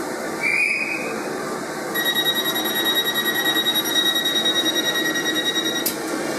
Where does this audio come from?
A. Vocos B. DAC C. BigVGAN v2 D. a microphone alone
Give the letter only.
D